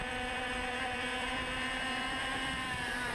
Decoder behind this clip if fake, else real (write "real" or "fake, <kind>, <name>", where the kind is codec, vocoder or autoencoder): fake, vocoder, BigVGAN v2